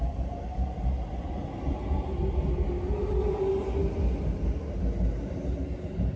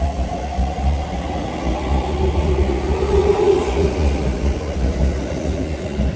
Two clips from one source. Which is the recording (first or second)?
first